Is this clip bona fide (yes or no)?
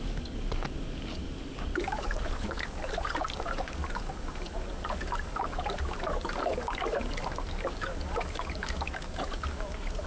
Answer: no